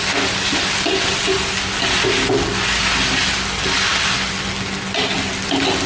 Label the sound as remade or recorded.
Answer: recorded